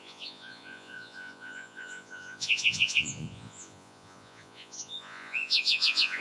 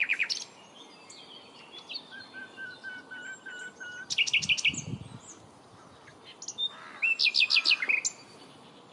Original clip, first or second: second